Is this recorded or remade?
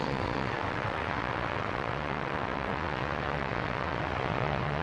remade